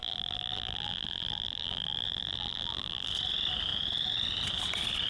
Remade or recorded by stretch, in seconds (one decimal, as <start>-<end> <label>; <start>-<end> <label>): 0.0-3.1 remade; 3.1-5.1 recorded